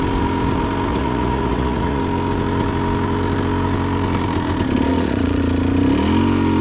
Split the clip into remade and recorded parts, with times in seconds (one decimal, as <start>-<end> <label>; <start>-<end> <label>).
0.0-0.9 recorded; 0.9-2.0 remade; 2.0-4.9 recorded; 4.9-5.4 remade; 5.4-6.6 recorded